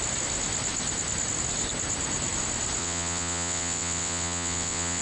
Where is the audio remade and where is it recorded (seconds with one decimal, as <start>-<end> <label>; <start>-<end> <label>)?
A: 0.0-2.8 recorded; 2.8-5.0 remade